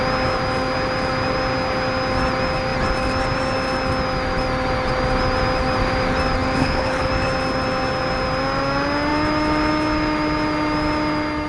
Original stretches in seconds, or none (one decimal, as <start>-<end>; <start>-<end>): 0.0-6.6; 7.1-11.5